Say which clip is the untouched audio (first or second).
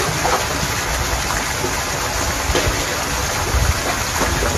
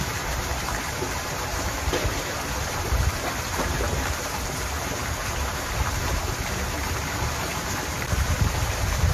first